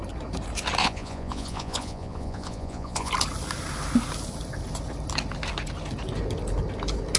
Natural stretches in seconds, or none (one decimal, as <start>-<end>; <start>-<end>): 0.0-0.8; 3.1-7.2